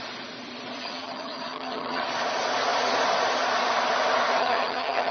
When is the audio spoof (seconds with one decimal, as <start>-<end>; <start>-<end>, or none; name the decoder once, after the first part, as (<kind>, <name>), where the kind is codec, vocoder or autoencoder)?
0.8-2.0 (vocoder, HiFi-GAN); 4.4-5.1